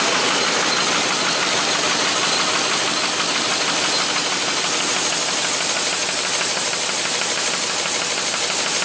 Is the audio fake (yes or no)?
no